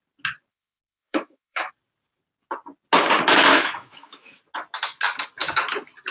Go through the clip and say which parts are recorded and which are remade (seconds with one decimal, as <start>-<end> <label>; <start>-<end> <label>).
0.0-0.5 recorded; 0.5-1.7 remade; 1.7-3.5 recorded; 3.5-4.4 remade; 4.4-6.1 recorded